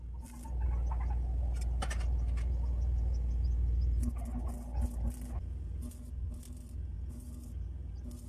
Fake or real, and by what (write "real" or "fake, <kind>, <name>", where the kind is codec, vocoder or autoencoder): real